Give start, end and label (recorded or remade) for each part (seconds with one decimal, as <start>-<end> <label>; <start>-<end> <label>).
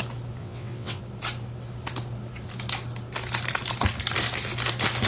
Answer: 0.0-0.4 recorded; 0.4-1.0 remade; 1.0-5.1 recorded